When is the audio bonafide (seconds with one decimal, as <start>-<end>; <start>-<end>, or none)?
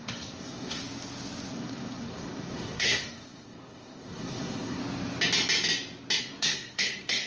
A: 0.8-1.5; 4.8-6.2